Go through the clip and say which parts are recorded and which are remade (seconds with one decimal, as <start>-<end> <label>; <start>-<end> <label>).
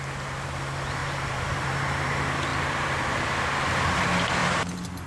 0.0-1.0 recorded; 1.0-1.8 remade; 1.8-2.5 recorded; 2.5-3.2 remade; 3.2-5.1 recorded